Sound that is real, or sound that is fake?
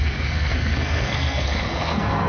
fake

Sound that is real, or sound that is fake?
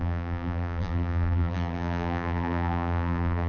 fake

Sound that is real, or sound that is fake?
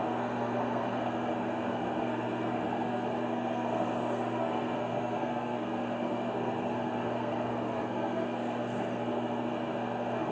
fake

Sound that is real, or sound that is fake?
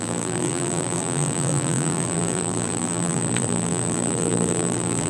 fake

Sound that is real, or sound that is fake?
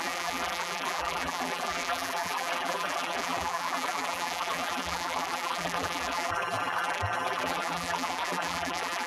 fake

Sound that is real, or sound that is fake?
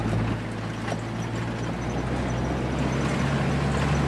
real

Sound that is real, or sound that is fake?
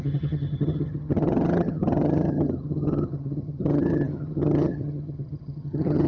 fake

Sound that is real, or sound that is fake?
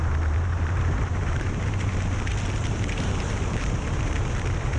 fake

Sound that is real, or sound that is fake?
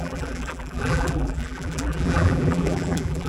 fake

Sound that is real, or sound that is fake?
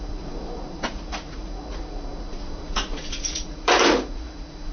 fake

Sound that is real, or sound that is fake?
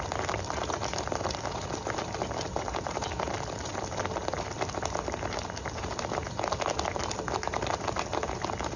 real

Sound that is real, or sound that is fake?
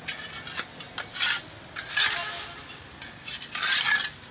real